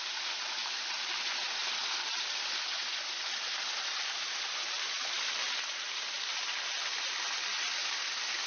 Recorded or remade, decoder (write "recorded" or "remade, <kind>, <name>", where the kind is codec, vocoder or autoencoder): remade, vocoder, BigVGAN v2